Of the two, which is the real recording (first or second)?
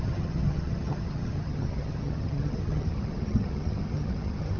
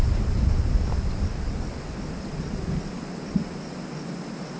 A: second